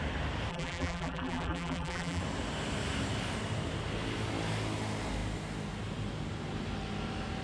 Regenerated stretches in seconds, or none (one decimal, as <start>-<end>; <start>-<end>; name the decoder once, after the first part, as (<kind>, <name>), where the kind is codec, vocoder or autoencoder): 0.5-2.2 (vocoder, BigVGAN v2)